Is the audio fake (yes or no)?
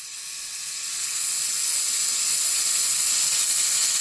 yes